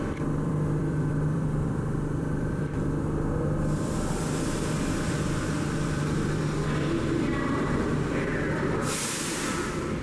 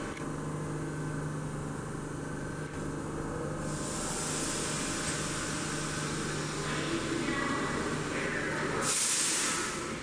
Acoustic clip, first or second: second